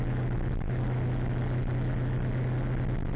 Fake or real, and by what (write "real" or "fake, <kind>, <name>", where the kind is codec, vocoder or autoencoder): real